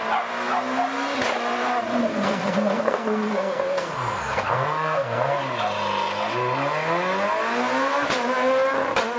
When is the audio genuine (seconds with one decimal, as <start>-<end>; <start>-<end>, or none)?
0.0-2.1; 5.4-9.2